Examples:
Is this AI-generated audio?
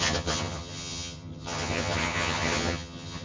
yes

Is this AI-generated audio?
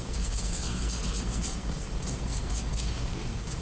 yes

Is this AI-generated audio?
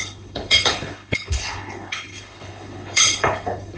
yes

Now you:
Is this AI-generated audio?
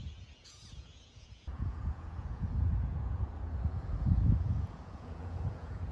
yes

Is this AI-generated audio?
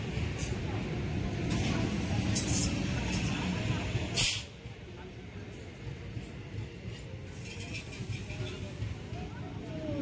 no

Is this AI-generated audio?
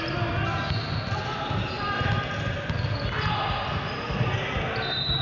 no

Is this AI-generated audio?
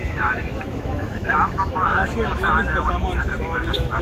yes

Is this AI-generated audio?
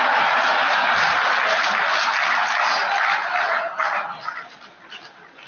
no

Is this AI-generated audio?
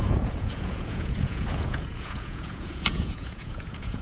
yes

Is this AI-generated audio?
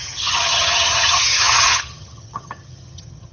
yes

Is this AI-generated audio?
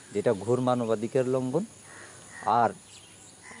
no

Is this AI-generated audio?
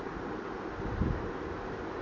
no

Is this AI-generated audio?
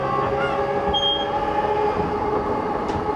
no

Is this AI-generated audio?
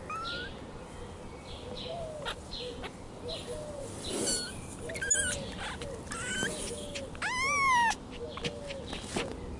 no